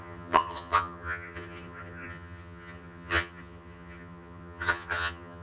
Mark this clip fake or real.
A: fake